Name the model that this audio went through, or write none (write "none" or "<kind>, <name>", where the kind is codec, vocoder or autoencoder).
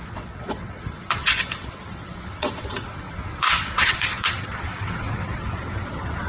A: vocoder, WaveNeXt